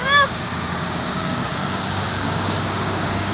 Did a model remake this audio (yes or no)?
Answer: yes